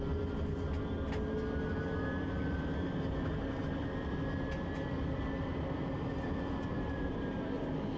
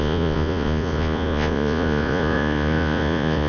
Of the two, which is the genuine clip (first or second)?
first